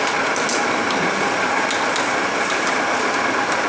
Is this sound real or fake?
real